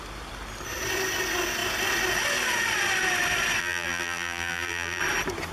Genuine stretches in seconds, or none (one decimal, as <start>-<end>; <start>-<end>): 0.0-3.6; 5.0-5.5